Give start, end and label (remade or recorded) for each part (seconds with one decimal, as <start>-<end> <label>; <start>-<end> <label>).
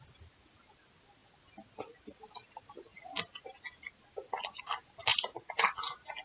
0.0-6.2 recorded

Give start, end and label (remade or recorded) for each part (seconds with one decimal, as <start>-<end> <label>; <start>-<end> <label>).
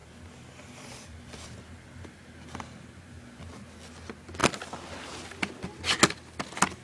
0.0-2.2 remade; 2.2-6.8 recorded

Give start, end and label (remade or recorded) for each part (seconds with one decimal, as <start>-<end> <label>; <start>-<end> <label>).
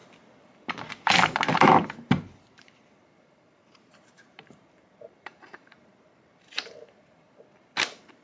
0.0-1.8 recorded; 1.8-6.7 remade; 6.7-8.2 recorded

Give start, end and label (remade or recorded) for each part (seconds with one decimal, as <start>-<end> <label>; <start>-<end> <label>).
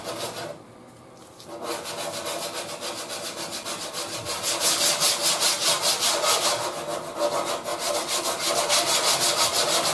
0.0-7.7 recorded; 7.7-8.6 remade; 8.6-9.9 recorded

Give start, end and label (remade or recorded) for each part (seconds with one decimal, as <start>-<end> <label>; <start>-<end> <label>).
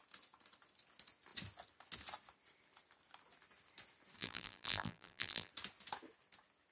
0.0-4.2 recorded; 4.2-5.5 remade; 5.5-6.7 recorded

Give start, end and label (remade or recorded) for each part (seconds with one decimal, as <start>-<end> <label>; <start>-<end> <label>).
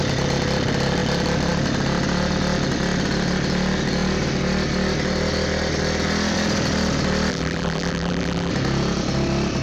0.0-7.3 recorded; 7.3-8.5 remade; 8.5-9.6 recorded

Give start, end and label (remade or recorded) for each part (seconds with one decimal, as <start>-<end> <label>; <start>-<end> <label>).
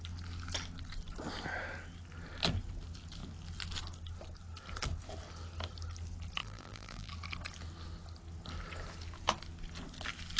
0.0-6.4 recorded; 6.4-7.1 remade; 7.1-10.4 recorded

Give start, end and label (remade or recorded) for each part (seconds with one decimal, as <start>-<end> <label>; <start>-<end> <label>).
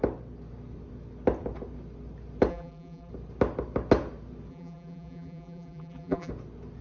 0.0-2.5 recorded; 2.5-3.1 remade; 3.1-4.5 recorded; 4.5-6.3 remade; 6.3-6.8 recorded